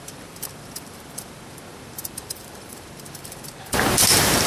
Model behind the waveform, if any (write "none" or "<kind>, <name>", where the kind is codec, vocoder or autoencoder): vocoder, BigVGAN v2